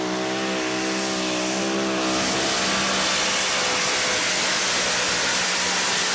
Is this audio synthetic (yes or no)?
no